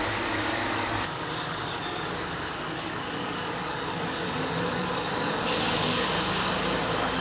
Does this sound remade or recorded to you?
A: remade